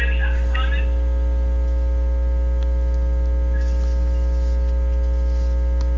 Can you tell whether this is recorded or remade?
recorded